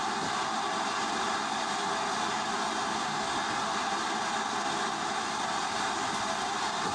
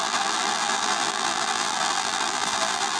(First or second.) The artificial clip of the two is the second